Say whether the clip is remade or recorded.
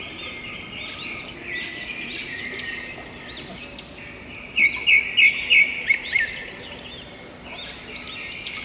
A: recorded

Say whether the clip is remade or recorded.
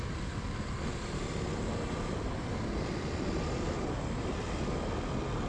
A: recorded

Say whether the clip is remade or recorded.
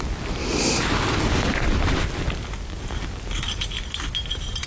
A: recorded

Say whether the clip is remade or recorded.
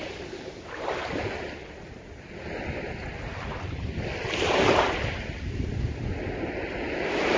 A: recorded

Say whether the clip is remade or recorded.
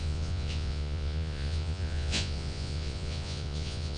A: remade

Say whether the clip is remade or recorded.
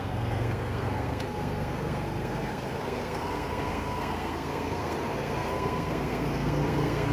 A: remade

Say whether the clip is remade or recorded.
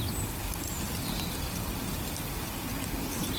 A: recorded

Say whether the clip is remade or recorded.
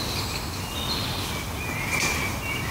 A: recorded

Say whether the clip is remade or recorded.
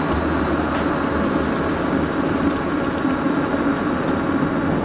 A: recorded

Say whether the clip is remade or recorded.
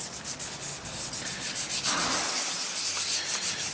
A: recorded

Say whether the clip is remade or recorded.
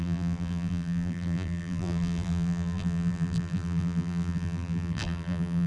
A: remade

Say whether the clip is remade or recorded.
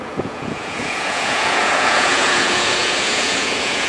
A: remade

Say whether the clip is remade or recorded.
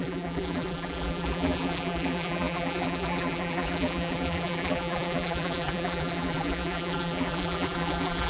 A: remade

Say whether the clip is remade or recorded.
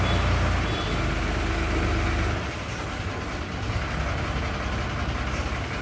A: recorded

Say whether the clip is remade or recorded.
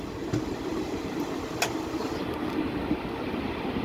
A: recorded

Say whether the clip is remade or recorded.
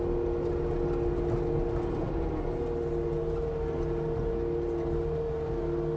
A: recorded